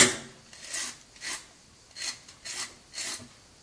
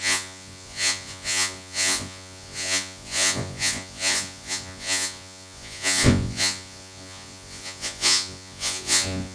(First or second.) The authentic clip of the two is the first